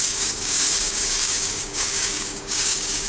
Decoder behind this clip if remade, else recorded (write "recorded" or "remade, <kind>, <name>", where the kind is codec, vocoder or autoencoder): remade, codec, DAC